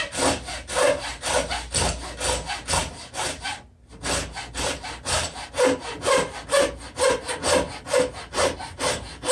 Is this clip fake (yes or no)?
no